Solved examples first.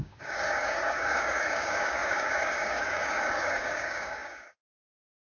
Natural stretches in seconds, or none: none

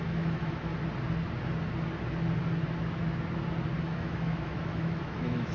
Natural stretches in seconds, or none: 0.7-3.8

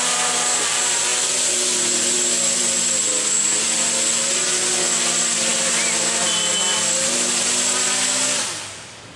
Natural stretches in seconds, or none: 0.0-9.2

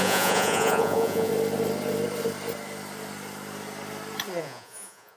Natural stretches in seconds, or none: 1.3-4.4

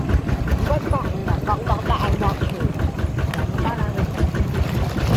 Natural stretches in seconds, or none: 0.0-5.2

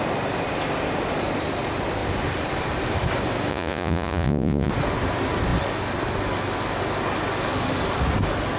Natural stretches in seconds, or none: 0.0-3.5; 4.7-8.6

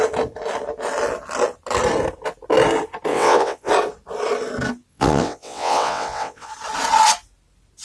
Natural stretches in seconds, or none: 0.0-3.1; 3.7-4.9; 6.5-7.8